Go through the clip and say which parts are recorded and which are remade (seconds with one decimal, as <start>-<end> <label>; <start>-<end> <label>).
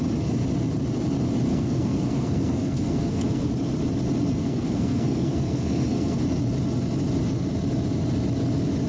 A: 0.0-1.5 recorded; 1.5-3.5 remade; 3.5-4.4 recorded; 4.4-6.2 remade; 6.2-8.9 recorded